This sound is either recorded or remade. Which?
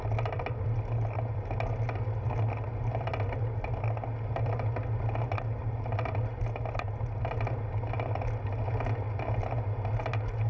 recorded